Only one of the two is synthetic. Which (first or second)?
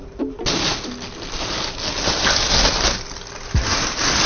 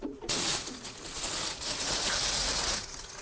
second